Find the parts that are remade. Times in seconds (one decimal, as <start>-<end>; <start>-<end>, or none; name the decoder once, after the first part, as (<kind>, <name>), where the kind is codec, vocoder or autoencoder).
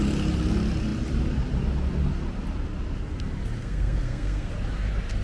3.6-4.5 (codec, SNAC)